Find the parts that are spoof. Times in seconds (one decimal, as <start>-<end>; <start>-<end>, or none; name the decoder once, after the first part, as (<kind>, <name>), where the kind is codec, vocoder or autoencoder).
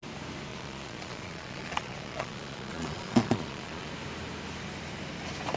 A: 0.5-3.9 (vocoder, Vocos)